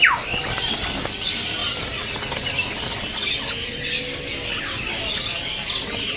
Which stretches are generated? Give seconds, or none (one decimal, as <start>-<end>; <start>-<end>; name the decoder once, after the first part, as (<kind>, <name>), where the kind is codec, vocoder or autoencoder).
none